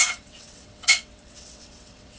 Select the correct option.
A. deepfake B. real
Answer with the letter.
A